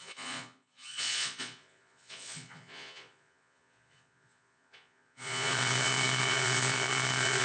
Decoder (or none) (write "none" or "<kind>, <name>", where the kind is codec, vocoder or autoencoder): vocoder, Vocos